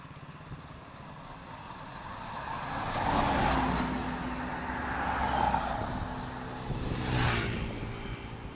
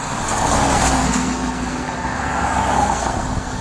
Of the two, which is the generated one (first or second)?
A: second